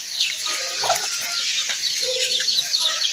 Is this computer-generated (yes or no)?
yes